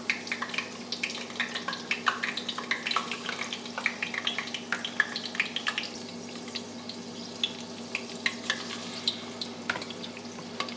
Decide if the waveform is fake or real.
real